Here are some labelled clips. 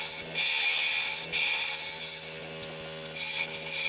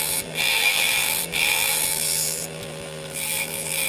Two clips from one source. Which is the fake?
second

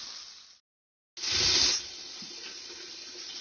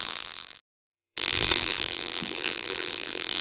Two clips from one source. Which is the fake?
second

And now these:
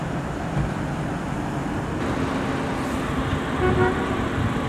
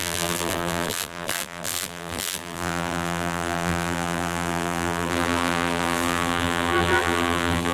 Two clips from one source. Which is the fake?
second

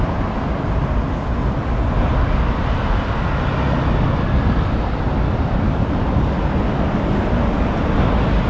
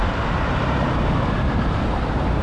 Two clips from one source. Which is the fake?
second